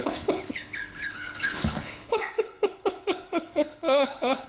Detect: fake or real fake